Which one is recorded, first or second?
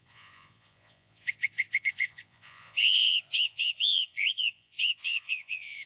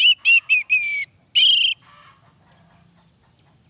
second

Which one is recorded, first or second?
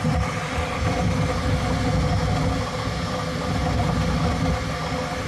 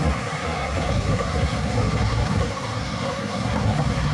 first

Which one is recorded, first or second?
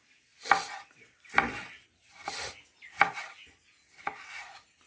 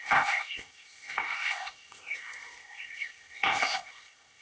first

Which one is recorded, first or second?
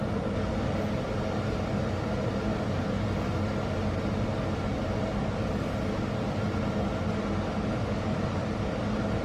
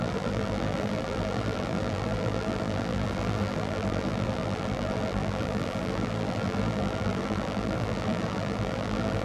first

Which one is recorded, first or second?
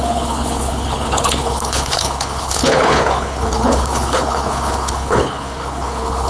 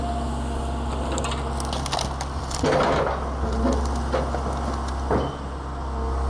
second